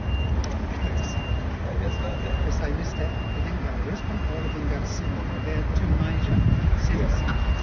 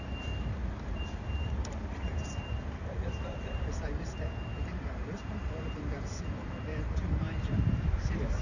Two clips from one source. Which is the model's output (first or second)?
second